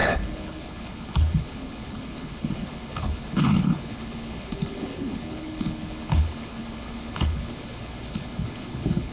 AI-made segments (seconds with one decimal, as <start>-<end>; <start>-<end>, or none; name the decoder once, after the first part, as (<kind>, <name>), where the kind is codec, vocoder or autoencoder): 0.0-9.1 (codec, HILCodec)